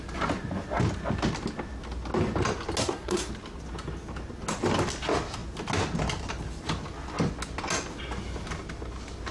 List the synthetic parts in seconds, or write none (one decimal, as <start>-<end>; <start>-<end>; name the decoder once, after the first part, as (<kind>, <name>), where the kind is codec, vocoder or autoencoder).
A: 2.8-3.3 (codec, SNAC)